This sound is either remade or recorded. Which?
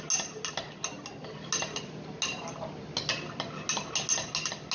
recorded